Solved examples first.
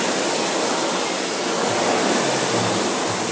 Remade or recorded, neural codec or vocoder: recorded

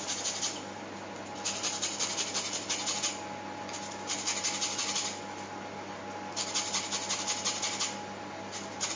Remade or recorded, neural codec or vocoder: recorded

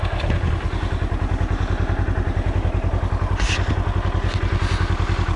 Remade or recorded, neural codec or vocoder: recorded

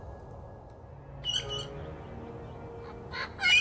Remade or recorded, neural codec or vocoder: recorded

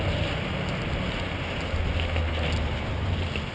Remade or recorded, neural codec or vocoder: recorded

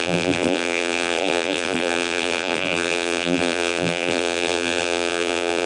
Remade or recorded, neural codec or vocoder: remade, vocoder, BigVGAN v2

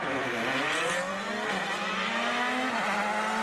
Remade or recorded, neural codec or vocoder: recorded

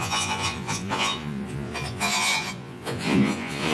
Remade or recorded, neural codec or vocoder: remade, vocoder, Vocos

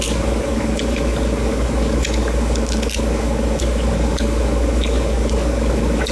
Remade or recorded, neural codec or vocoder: remade, codec, DAC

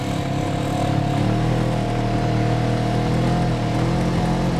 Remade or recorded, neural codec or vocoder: recorded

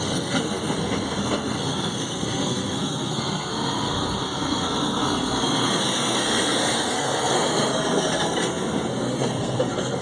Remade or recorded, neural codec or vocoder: remade, codec, SNAC